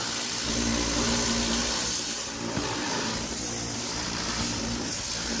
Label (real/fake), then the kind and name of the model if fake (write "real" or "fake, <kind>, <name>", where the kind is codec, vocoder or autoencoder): real